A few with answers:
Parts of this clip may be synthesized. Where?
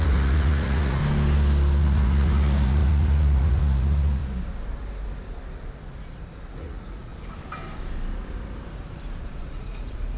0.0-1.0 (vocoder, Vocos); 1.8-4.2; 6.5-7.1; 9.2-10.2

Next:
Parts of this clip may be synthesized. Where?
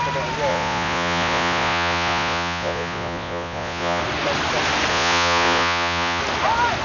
0.5-4.0 (vocoder, Vocos); 4.9-6.2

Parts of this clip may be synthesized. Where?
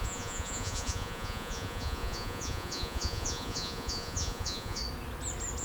0.0-4.8 (vocoder, Vocos)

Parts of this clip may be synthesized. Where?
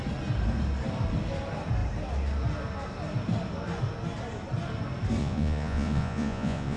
5.2-6.8 (vocoder, Vocos)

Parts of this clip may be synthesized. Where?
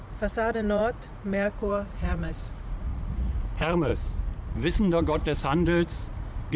0.0-3.9 (vocoder, Vocos); 4.5-6.6